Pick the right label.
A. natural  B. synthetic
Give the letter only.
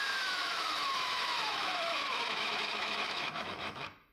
B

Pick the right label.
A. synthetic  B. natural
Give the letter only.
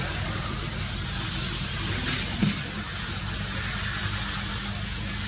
B